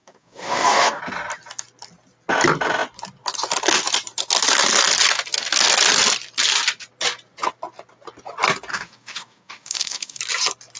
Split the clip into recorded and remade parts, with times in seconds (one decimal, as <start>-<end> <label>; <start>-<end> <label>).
0.0-1.0 remade; 1.0-8.7 recorded; 8.7-10.2 remade; 10.2-10.8 recorded